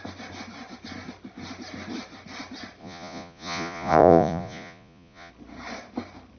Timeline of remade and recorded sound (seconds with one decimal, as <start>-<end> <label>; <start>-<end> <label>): 0.0-2.8 recorded; 2.8-5.3 remade; 5.3-6.4 recorded